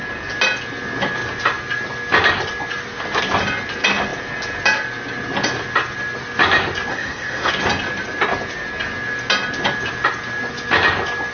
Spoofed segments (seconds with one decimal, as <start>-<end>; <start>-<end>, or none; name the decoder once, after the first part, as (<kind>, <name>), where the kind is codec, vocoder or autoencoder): 6.9-7.5 (codec, SNAC)